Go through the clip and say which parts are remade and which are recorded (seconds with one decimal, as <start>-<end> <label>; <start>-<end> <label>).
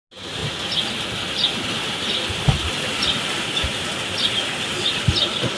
0.0-5.6 recorded